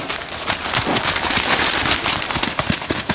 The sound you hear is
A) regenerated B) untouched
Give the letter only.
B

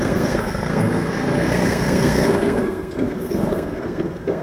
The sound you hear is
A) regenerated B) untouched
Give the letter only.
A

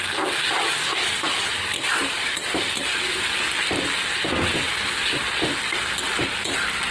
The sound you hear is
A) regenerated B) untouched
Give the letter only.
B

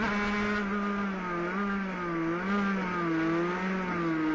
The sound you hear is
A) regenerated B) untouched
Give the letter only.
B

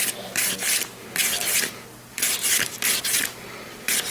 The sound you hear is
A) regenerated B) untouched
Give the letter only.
B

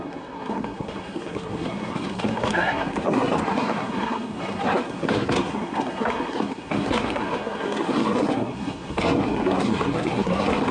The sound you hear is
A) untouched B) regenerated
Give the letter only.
B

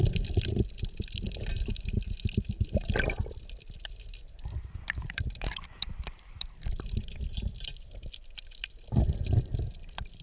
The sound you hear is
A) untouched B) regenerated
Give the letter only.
B